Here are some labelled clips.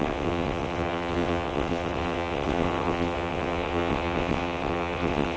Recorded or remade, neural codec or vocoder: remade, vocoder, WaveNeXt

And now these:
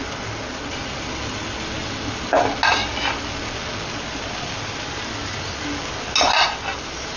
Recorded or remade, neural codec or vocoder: recorded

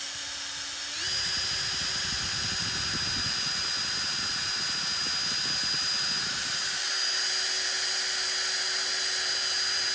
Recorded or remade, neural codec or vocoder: recorded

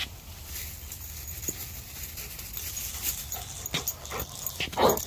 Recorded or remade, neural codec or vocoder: recorded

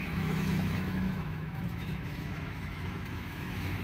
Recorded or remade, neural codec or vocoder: remade, autoencoder, DAC-VAE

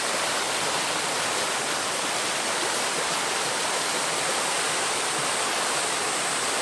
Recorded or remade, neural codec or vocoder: recorded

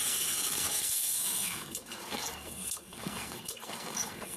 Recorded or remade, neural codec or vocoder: remade, codec, SNAC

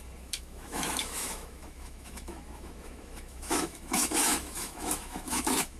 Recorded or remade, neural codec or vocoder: remade, autoencoder, DAC-VAE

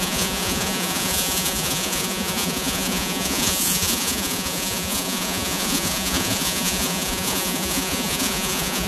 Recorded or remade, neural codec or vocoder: remade, vocoder, Vocos